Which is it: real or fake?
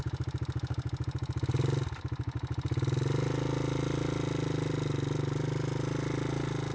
real